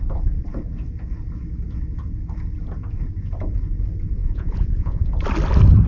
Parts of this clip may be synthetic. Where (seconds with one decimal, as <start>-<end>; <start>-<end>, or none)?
4.2-5.1